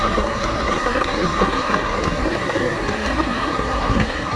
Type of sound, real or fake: fake